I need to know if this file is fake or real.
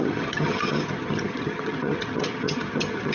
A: fake